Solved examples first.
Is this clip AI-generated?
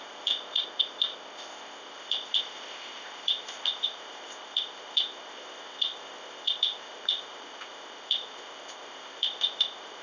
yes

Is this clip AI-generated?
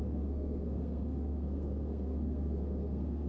yes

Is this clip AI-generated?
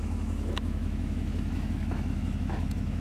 yes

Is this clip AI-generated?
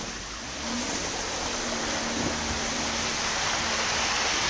no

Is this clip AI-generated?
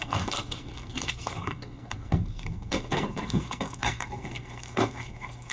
yes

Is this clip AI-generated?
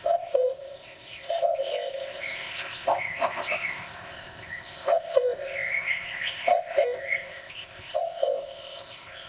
yes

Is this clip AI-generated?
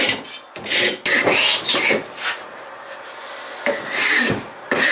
no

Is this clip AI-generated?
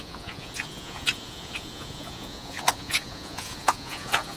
yes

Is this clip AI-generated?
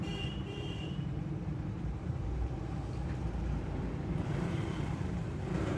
yes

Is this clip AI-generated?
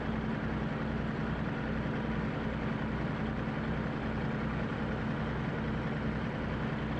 no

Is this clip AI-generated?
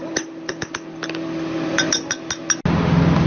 no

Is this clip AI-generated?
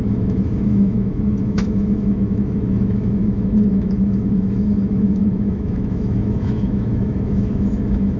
yes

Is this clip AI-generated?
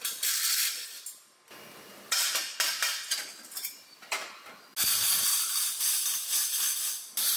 no